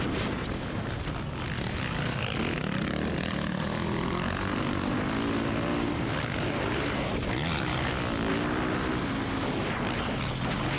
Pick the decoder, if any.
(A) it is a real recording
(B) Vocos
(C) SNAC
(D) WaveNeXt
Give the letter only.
A